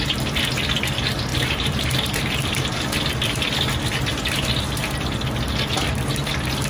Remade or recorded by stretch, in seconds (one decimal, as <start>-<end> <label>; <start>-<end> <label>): 0.0-1.3 recorded; 1.3-2.6 remade; 2.6-6.7 recorded